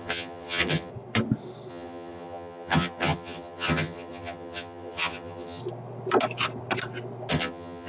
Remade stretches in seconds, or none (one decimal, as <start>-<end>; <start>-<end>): 0.0-0.9; 1.7-5.6; 7.3-7.9